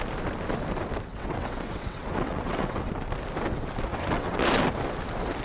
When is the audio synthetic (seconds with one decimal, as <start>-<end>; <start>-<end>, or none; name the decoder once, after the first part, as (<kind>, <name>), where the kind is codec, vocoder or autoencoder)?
1.1-2.9 (vocoder, WaveNeXt); 3.9-4.5